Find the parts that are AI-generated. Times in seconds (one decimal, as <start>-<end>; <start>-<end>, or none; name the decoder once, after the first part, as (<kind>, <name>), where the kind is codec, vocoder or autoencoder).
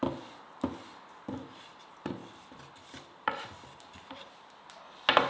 2.2-4.3 (vocoder, BigVGAN v2)